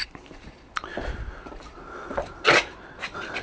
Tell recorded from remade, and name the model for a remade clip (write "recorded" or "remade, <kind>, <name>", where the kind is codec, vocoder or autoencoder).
remade, vocoder, BigVGAN v2